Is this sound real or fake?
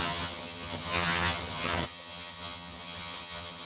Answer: fake